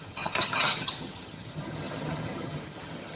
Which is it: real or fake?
fake